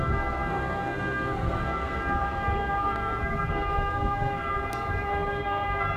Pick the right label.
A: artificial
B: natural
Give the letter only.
A